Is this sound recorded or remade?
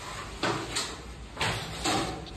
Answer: recorded